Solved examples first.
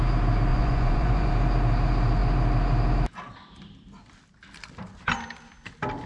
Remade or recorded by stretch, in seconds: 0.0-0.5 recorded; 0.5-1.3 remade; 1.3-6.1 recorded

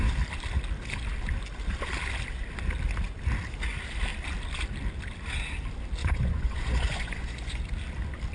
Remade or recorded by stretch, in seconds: 0.0-6.0 recorded; 6.0-7.6 remade; 7.6-8.3 recorded

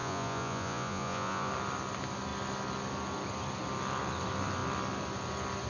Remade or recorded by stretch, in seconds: 0.0-1.5 remade; 1.5-5.7 recorded

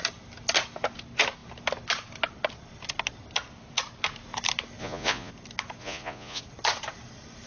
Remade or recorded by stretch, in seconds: 0.0-4.8 recorded; 4.8-5.3 remade; 5.3-5.8 recorded; 5.8-6.4 remade; 6.4-7.5 recorded